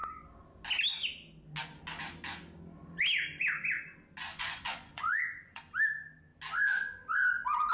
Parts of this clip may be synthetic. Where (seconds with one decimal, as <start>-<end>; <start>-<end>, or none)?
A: 4.3-5.6